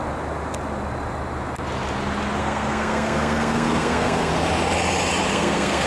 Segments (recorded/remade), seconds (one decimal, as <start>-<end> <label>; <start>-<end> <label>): 0.0-2.4 recorded; 2.4-4.3 remade; 4.3-5.3 recorded; 5.3-5.9 remade